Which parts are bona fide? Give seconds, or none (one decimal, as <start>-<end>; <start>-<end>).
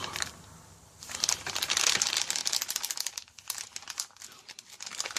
0.0-5.2